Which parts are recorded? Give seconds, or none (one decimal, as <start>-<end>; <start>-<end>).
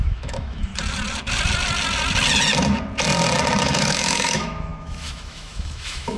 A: 0.7-3.6